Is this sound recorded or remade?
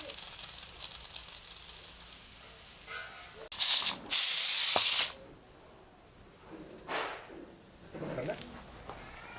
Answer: recorded